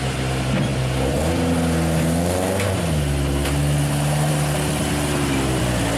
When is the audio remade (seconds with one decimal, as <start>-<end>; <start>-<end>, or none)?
none